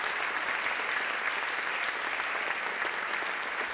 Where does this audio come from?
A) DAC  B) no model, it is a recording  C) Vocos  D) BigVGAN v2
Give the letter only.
B